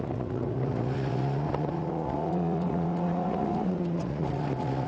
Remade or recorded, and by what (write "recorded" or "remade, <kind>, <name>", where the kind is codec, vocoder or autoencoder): remade, vocoder, Vocos